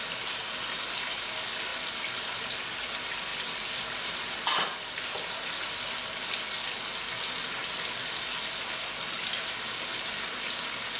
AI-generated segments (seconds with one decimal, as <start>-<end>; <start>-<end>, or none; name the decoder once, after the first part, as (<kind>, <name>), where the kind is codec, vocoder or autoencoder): none